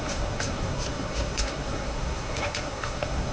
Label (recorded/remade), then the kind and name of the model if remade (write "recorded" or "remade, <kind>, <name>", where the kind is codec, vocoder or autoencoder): remade, codec, SNAC